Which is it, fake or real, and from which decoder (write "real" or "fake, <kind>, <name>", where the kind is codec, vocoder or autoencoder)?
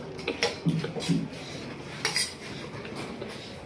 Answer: real